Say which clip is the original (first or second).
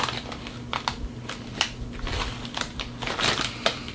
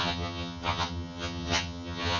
first